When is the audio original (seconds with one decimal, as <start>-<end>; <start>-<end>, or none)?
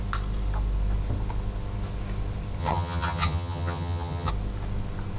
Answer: 0.0-2.6; 4.3-5.2